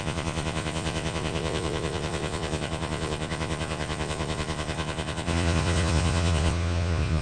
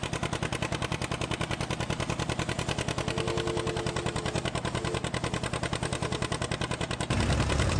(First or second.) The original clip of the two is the second